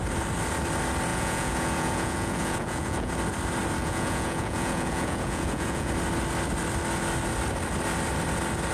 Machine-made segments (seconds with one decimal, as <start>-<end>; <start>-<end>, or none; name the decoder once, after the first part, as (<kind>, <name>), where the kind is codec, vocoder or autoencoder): 1.1-3.1 (vocoder, Vocos); 3.8-5.9